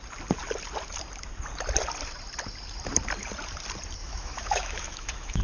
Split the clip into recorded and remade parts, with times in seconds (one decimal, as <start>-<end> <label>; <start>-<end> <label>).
0.0-4.0 recorded; 4.0-5.4 remade

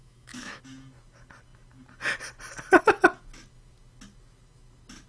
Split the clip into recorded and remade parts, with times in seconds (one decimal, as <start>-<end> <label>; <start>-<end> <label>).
0.0-0.6 remade; 0.6-5.1 recorded

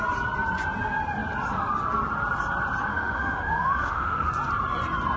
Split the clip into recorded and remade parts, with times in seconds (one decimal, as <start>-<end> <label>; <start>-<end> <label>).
0.0-2.9 recorded; 2.9-4.3 remade; 4.3-5.2 recorded

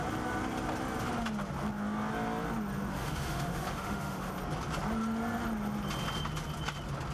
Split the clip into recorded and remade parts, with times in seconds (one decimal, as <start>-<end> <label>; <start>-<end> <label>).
0.0-2.9 recorded; 2.9-4.3 remade; 4.3-7.1 recorded